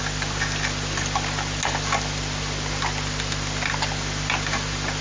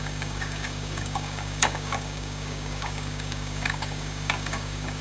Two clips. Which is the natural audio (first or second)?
first